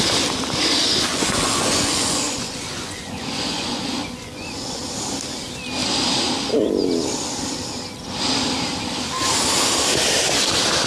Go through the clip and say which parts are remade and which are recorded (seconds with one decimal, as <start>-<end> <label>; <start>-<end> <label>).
0.0-1.1 recorded; 1.1-4.8 remade; 4.8-10.9 recorded